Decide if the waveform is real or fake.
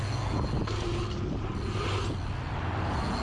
real